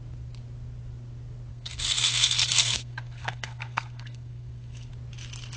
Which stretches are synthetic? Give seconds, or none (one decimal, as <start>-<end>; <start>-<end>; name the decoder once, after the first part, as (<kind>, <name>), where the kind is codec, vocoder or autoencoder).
1.5-4.9 (codec, SNAC)